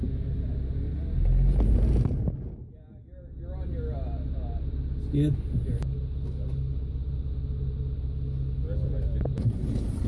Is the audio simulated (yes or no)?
no